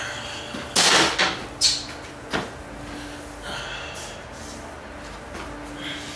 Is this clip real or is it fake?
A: real